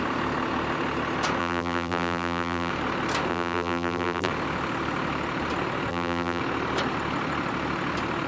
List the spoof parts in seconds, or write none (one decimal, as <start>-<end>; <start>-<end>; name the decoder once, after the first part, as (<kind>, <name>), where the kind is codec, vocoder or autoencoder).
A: 1.4-2.7 (vocoder, BigVGAN v2); 3.3-4.3; 5.9-6.4